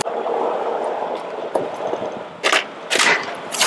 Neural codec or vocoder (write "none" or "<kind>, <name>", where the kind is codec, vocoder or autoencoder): none